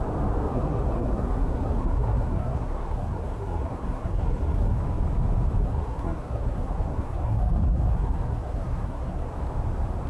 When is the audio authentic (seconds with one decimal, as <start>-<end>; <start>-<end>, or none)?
0.0-0.5; 4.8-5.6; 9.3-10.1